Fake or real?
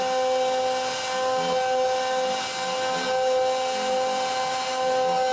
real